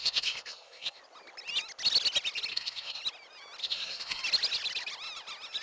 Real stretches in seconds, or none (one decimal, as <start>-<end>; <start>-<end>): 1.0-2.5; 3.0-3.6; 4.2-5.6